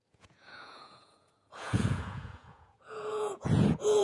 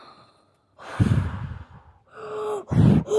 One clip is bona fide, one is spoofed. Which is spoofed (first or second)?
first